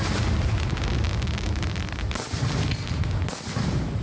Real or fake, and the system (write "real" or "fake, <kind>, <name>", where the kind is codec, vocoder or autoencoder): real